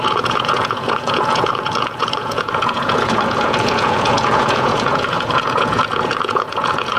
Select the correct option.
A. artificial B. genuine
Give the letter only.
A